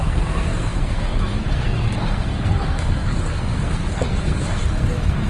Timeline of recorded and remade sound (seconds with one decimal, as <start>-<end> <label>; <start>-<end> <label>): 0.0-5.3 remade